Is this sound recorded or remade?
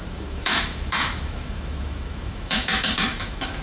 remade